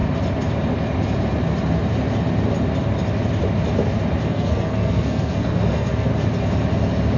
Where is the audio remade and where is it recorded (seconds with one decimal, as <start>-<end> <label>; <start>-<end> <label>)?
0.0-4.3 recorded; 4.3-6.1 remade; 6.1-7.2 recorded